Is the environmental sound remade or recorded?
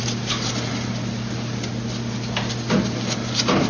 recorded